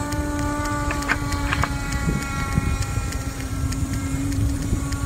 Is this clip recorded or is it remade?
remade